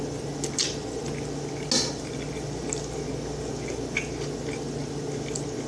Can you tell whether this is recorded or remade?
recorded